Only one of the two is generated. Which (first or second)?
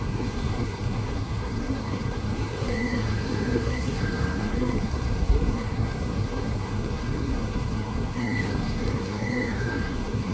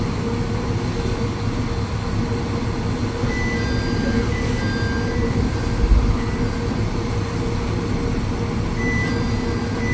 first